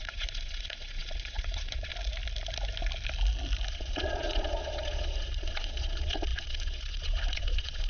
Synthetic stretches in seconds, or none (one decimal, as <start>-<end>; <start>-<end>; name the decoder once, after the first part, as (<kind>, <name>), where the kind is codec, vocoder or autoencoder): 0.0-1.9 (vocoder, Vocos); 3.7-7.9